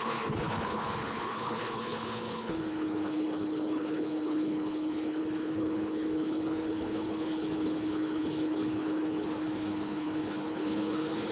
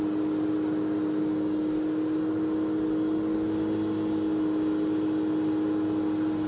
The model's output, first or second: first